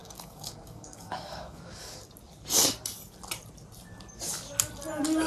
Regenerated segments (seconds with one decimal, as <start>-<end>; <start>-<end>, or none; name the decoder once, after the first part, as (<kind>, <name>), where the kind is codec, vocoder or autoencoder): 0.0-2.0 (codec, DAC)